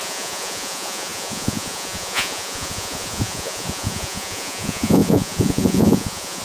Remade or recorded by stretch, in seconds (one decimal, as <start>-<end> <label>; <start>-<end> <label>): 0.0-6.4 remade